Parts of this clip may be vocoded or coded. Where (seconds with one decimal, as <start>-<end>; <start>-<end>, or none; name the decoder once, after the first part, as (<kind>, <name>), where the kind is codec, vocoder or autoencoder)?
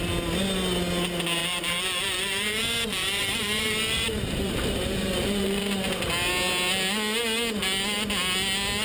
1.4-5.6 (vocoder, BigVGAN v2)